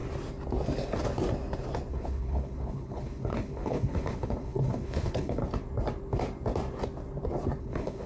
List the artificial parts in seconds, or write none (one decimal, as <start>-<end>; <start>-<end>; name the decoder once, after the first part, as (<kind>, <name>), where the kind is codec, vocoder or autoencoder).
1.9-5.4 (codec, HILCodec); 7.6-8.1